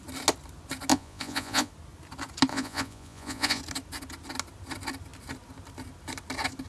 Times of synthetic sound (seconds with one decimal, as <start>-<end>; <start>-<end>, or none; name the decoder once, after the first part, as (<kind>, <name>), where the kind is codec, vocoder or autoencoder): 0.9-1.7 (vocoder, Vocos); 2.5-3.6